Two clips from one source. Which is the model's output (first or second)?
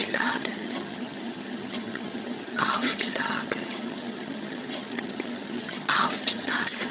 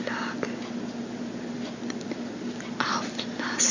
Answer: first